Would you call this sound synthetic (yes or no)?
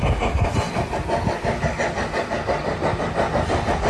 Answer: no